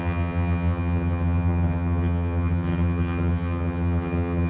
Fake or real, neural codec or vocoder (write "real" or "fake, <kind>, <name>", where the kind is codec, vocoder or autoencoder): fake, vocoder, HiFi-GAN